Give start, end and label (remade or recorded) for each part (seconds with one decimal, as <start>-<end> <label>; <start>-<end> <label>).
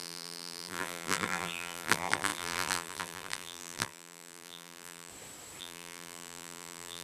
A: 0.0-5.1 remade; 5.1-5.6 recorded; 5.6-7.0 remade